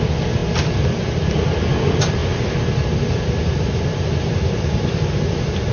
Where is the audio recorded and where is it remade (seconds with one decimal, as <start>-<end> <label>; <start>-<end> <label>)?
0.0-0.4 recorded; 0.4-1.4 remade; 1.4-2.2 recorded; 2.2-5.7 remade